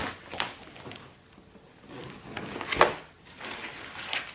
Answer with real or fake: real